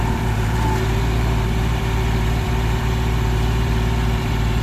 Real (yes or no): no